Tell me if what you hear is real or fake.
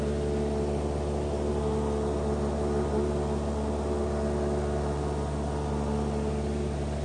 real